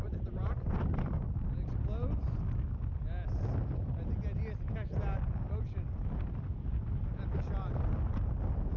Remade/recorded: recorded